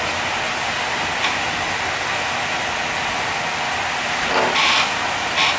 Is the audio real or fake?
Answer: real